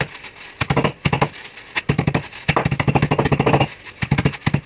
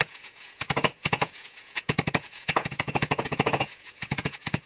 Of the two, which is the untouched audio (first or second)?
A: first